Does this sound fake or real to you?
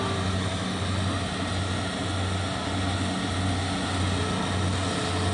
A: real